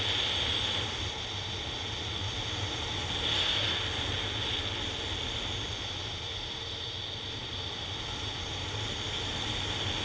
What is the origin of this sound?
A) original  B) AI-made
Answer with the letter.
A